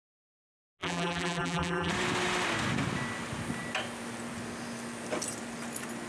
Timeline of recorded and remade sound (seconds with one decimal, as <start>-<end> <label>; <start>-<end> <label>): 0.0-0.8 recorded; 0.8-1.9 remade; 1.9-6.1 recorded